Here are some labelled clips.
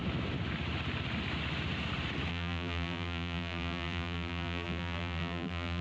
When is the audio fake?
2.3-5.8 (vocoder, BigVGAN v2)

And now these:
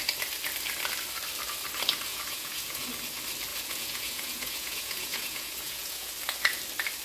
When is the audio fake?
2.1-2.9 (vocoder, Vocos); 3.5-6.1